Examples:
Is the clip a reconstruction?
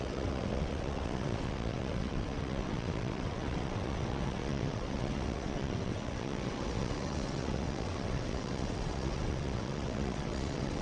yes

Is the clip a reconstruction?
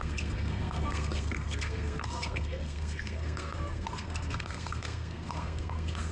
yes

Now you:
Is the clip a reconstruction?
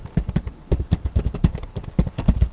no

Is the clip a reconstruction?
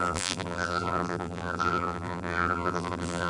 yes